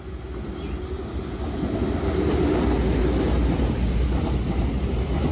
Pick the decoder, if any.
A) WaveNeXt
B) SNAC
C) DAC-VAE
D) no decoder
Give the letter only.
D